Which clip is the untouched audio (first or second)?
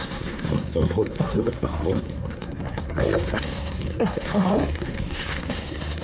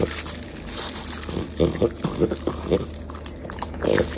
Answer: second